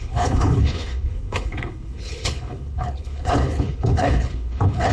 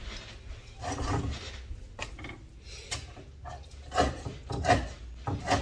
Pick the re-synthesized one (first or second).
first